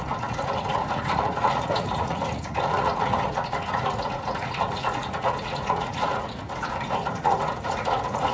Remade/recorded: remade